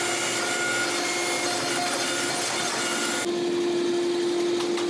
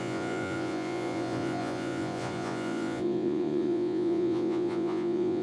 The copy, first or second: second